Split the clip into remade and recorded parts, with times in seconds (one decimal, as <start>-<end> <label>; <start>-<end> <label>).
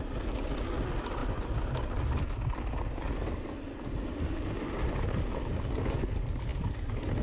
0.0-7.2 recorded